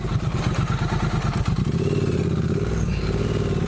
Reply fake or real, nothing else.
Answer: real